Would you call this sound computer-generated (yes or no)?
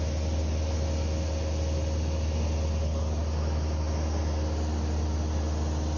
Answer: no